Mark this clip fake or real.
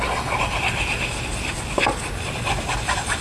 real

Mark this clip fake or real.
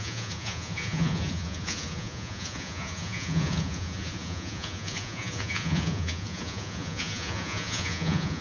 fake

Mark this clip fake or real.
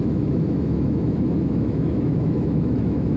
fake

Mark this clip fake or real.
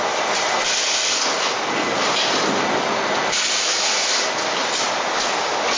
real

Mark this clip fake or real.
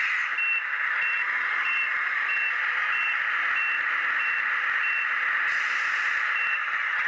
real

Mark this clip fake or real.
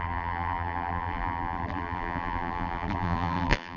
fake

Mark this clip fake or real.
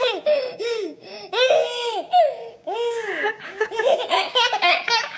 fake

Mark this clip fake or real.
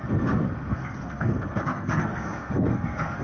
fake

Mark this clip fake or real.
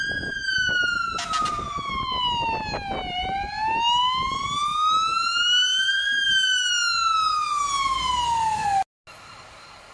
real